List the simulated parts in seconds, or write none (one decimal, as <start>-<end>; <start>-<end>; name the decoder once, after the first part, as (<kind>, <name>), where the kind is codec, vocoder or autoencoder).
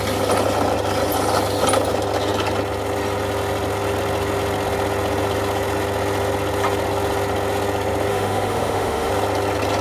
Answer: 8.1-9.1 (autoencoder, DAC-VAE)